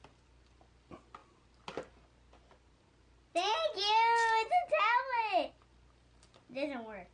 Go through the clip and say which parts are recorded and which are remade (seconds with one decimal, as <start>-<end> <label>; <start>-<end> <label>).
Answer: 0.0-7.1 recorded